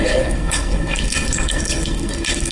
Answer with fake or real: fake